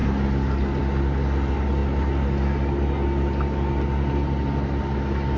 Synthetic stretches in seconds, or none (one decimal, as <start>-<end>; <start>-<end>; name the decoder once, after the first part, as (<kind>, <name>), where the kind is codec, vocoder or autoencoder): none